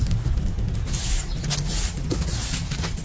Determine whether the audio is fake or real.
real